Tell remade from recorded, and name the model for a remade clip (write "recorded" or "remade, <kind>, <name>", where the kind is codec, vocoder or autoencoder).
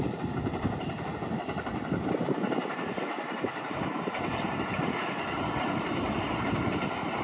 remade, vocoder, BigVGAN v2